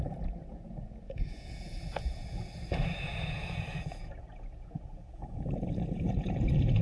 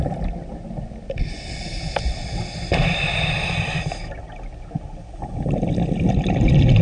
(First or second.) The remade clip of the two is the first